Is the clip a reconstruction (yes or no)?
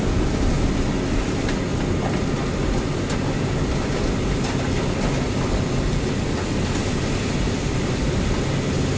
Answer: no